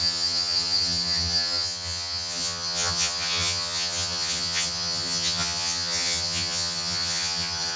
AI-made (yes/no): yes